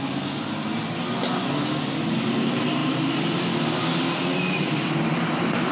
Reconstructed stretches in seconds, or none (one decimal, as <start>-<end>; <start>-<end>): none